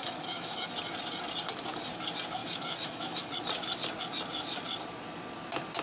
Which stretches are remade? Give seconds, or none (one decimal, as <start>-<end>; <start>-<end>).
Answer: 0.0-0.7; 2.4-3.3